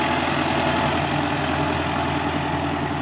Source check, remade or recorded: recorded